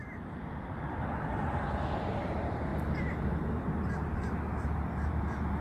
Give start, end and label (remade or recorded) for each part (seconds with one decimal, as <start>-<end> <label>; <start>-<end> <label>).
0.0-5.6 recorded

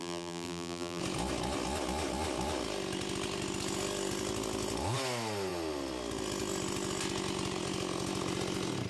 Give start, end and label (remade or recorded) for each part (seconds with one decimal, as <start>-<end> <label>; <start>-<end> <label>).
0.0-1.0 remade; 1.0-8.9 recorded

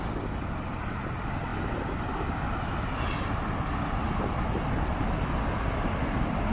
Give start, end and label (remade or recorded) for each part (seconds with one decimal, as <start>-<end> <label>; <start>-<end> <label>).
0.0-6.5 recorded

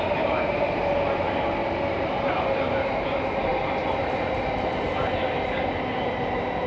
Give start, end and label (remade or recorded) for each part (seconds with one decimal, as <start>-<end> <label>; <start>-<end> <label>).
0.0-6.7 recorded